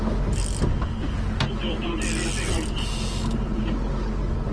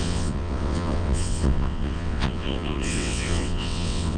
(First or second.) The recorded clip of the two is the first